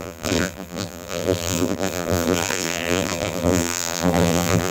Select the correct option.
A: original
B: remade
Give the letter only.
B